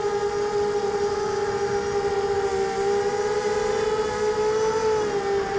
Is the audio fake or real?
real